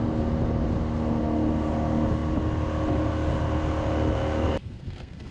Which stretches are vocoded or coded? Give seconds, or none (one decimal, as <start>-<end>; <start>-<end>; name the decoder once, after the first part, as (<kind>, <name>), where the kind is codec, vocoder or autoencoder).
4.6-5.3 (codec, SNAC)